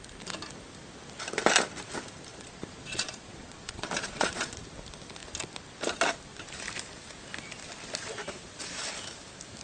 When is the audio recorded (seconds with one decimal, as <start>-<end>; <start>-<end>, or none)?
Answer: 0.0-2.3; 4.6-9.6